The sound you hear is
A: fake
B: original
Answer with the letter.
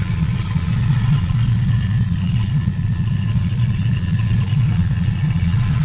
A